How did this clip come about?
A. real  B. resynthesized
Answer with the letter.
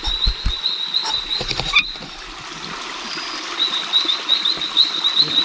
A